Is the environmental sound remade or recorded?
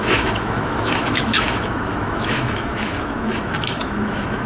remade